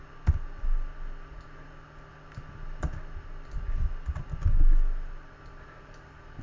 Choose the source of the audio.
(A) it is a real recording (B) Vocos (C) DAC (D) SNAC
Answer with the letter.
A